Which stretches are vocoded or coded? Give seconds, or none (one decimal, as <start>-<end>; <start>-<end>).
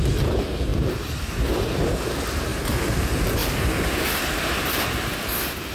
0.7-1.3